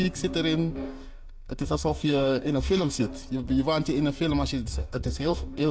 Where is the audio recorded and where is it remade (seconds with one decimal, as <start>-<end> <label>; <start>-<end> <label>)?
0.0-0.7 recorded; 0.7-3.1 remade; 3.1-4.7 recorded; 4.7-5.7 remade